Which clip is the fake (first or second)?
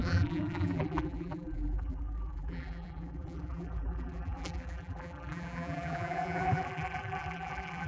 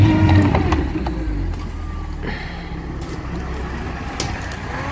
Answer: first